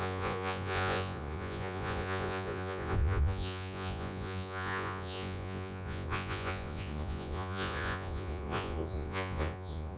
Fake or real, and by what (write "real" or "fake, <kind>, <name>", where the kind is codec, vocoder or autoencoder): fake, vocoder, Vocos